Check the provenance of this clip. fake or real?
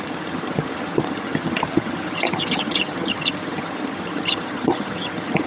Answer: fake